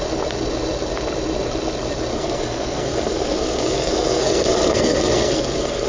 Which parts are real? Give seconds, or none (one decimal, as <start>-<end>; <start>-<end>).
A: 0.0-2.1